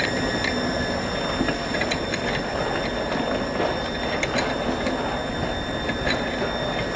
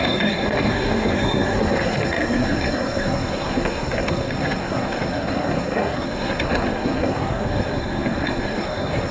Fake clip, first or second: second